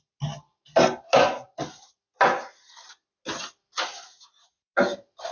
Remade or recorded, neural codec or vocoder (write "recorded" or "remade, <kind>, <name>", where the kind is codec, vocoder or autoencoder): recorded